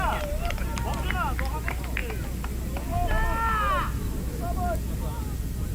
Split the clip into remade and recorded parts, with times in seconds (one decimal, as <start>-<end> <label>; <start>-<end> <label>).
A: 0.0-5.7 recorded

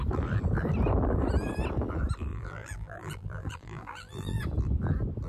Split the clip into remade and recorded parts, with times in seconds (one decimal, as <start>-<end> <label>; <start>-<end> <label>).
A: 0.0-2.3 recorded; 2.3-4.4 remade; 4.4-5.3 recorded

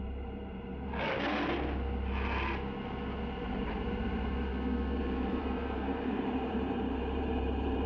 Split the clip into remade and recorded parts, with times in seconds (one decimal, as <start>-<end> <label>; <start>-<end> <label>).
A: 0.0-0.7 remade; 0.7-3.4 recorded; 3.4-4.5 remade; 4.5-5.0 recorded; 5.0-7.9 remade

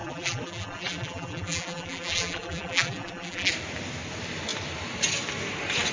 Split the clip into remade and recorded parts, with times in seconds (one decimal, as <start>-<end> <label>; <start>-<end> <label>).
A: 0.0-3.5 remade; 3.5-5.9 recorded

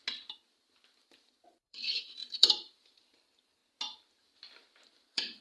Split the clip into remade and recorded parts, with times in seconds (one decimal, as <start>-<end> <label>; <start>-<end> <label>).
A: 0.0-1.5 recorded; 1.5-3.6 remade; 3.6-4.9 recorded; 4.9-5.4 remade

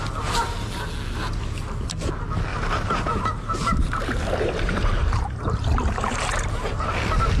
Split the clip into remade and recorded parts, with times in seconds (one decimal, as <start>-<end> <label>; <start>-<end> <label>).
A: 0.0-2.5 recorded; 2.5-6.9 remade; 6.9-7.4 recorded